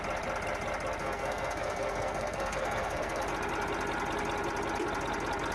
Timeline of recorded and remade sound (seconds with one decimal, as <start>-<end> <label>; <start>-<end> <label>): 0.0-1.0 recorded; 1.0-3.2 remade; 3.2-5.5 recorded